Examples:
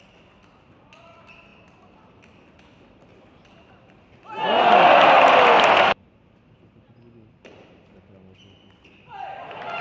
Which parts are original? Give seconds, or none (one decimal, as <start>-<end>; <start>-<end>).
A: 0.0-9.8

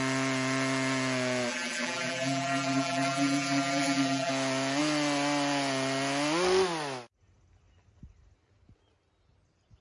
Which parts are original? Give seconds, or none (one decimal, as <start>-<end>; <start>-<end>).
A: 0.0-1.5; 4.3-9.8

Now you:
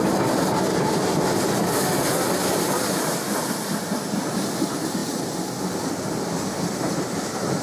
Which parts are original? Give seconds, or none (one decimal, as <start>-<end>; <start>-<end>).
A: 0.0-2.4; 3.2-7.6

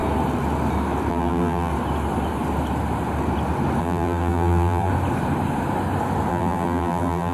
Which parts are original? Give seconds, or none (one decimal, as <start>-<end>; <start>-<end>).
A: 0.0-1.1; 1.7-3.8; 4.9-6.3